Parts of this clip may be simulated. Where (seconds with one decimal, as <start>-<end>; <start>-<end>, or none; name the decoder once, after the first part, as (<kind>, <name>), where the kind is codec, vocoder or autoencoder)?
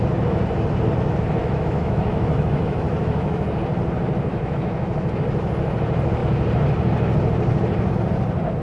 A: 1.4-3.4 (autoencoder, DAC-VAE); 4.3-5.1